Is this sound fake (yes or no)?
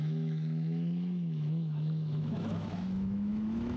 yes